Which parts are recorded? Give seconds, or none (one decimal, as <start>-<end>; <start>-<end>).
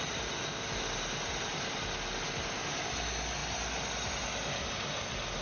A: 0.0-5.4